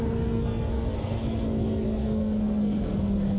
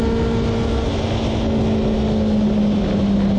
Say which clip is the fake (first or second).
first